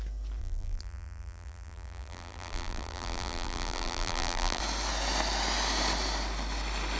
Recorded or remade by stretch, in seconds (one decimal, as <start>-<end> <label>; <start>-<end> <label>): 0.0-0.4 recorded; 0.4-4.6 remade; 4.6-7.0 recorded